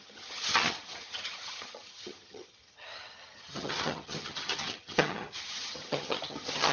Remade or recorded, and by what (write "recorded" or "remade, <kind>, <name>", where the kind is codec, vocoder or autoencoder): remade, vocoder, HiFi-GAN